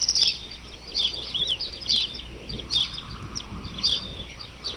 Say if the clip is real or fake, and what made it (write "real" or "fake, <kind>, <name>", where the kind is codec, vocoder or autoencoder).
fake, vocoder, BigVGAN v2